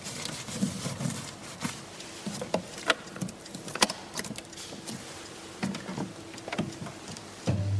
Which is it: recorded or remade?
recorded